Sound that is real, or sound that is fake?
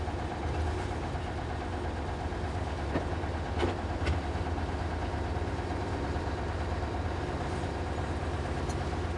real